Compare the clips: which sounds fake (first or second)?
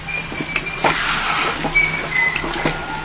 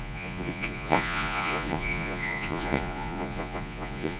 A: second